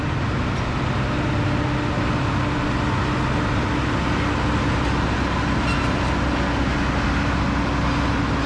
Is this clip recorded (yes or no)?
yes